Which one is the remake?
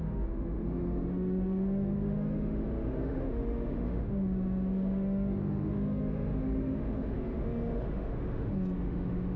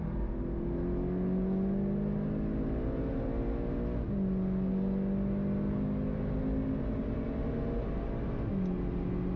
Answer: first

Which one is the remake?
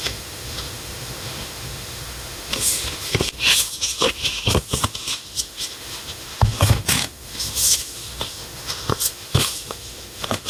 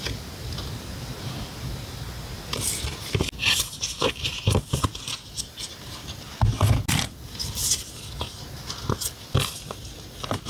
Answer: first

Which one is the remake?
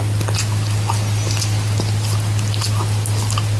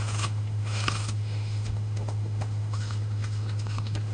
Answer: second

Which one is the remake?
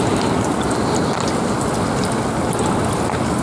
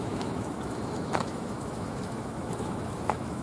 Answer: second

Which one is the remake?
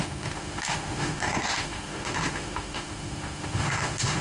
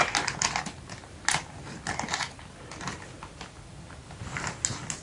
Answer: first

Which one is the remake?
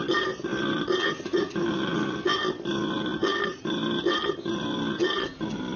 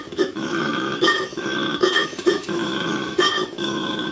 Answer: second